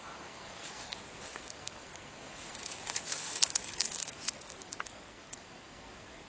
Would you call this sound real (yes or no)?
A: no